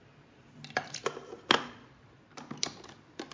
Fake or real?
real